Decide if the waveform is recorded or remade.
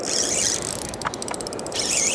recorded